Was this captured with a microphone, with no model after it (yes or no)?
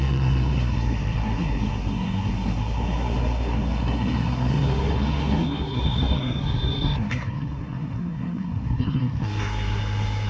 no